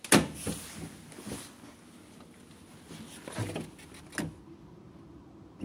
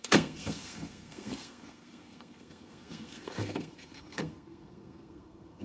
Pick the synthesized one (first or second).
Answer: second